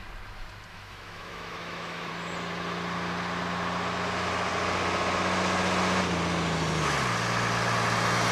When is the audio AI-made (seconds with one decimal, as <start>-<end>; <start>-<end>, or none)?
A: 0.7-2.1